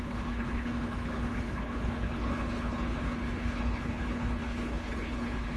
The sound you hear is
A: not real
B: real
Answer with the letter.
A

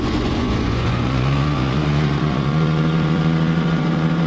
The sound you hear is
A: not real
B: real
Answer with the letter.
A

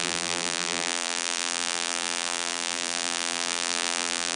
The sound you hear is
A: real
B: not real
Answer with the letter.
B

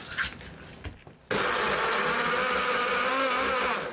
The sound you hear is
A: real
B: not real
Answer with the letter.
A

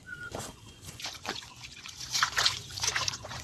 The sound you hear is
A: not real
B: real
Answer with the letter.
A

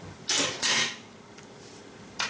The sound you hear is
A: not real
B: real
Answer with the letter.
B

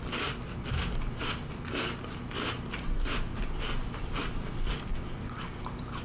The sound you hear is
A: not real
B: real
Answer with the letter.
B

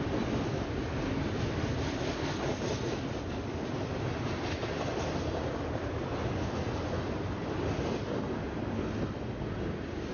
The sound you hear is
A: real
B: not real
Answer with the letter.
A